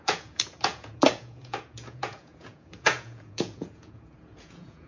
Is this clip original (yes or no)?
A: no